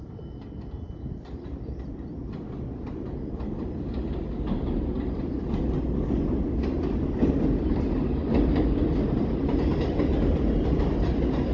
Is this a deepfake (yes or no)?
no